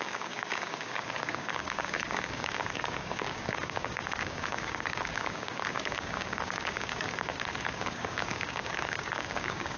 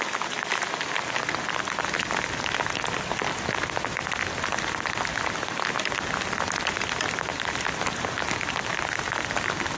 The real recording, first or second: second